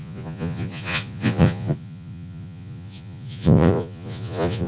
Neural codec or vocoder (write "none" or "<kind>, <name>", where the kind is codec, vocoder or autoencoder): vocoder, Vocos